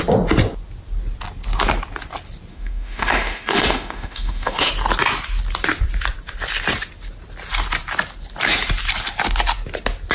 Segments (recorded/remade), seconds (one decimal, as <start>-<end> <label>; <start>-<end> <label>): 0.0-2.5 recorded; 2.5-4.7 remade; 4.7-10.1 recorded